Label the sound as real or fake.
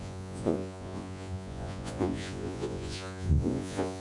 fake